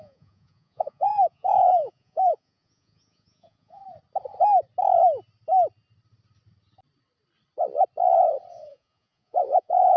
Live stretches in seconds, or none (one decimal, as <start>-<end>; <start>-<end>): 3.8-8.5